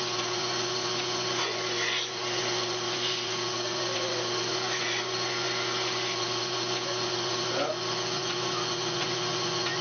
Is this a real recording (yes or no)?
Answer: no